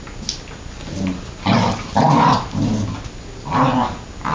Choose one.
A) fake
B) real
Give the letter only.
B